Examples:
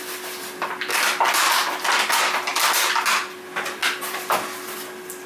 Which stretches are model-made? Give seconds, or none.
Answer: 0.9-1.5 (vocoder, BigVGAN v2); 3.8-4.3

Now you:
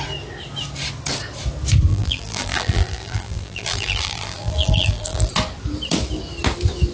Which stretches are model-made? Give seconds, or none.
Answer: 1.9-5.3 (vocoder, BigVGAN v2)

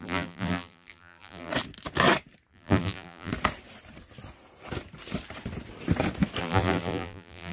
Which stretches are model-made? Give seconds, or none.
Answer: 0.0-1.5 (vocoder, BigVGAN v2); 2.5-3.3; 6.4-7.5

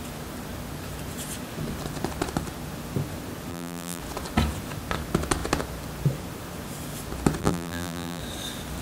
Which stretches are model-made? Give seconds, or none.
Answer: 3.5-4.0 (vocoder, BigVGAN v2); 7.4-8.2

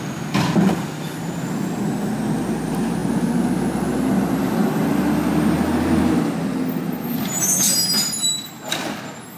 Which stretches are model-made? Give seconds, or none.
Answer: none

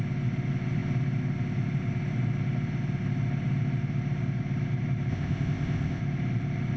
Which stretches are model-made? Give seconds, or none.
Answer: 5.1-6.0 (codec, ZipCodec)

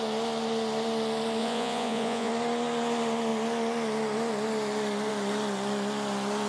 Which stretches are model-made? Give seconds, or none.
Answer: 1.4-2.3 (vocoder, Vocos)